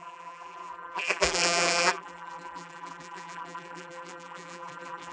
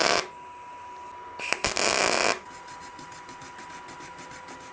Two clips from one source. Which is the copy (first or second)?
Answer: first